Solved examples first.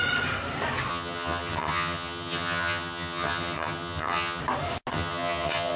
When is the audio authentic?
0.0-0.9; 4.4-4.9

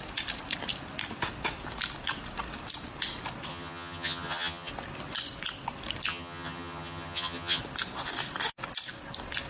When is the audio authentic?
0.0-3.5; 4.7-6.1; 7.6-9.5

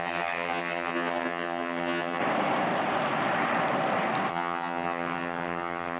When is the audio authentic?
2.2-4.3